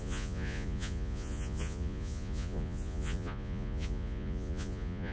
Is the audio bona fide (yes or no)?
no